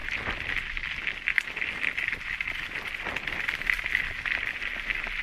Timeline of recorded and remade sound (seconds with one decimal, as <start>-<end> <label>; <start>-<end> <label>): 0.0-5.2 recorded